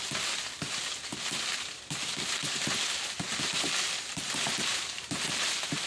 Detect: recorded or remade recorded